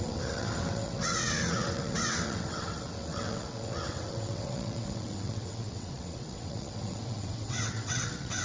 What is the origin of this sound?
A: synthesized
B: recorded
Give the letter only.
A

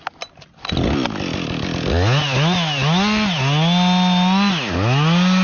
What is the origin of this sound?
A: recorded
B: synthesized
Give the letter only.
A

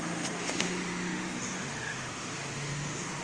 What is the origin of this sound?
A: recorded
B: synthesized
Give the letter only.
B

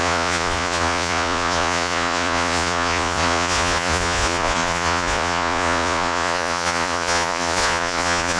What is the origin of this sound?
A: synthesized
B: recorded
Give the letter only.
A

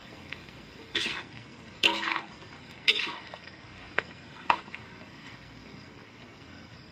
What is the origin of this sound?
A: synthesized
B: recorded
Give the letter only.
A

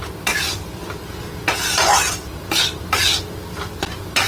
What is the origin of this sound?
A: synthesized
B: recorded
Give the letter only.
B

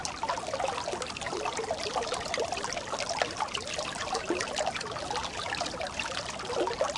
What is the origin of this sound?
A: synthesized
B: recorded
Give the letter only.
B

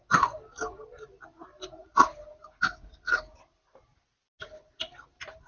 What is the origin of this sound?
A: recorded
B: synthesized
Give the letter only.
A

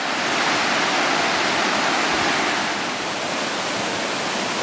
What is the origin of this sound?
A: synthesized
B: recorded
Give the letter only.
B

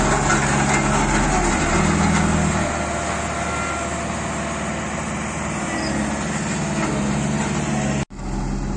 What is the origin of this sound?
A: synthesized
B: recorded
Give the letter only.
B